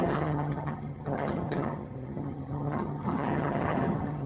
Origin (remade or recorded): remade